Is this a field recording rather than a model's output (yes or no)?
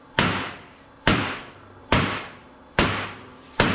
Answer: no